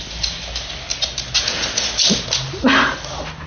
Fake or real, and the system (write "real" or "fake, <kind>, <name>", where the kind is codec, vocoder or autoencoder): real